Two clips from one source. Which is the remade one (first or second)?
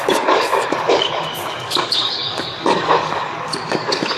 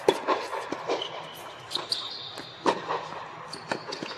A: first